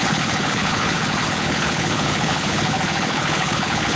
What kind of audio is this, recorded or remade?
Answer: remade